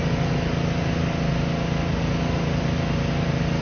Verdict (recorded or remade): recorded